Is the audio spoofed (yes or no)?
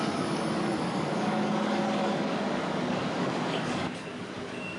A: yes